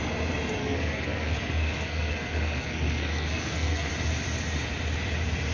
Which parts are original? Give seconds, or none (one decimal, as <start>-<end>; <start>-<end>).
0.0-0.6; 3.9-5.5